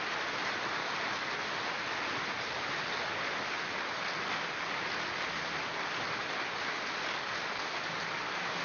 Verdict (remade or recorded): recorded